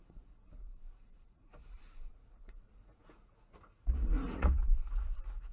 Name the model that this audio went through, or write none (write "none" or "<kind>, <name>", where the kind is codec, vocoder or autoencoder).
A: vocoder, Vocos